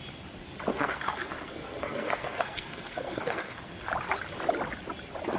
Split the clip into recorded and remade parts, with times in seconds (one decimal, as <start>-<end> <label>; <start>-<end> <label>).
0.0-0.7 recorded; 0.7-3.9 remade; 3.9-5.4 recorded